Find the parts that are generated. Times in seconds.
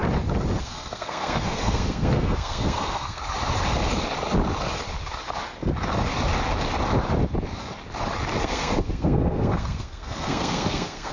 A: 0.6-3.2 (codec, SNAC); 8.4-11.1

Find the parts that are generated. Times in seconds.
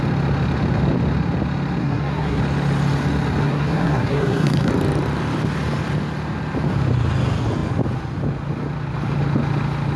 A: 1.8-2.4 (codec, SNAC); 3.4-4.7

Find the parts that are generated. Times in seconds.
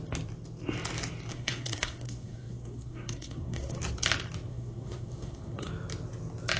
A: 1.3-3.8 (codec, SNAC); 4.5-5.7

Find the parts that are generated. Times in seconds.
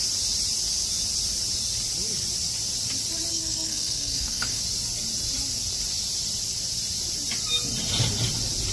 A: 3.3-4.6 (codec, SNAC)